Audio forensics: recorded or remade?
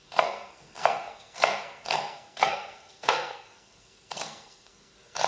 remade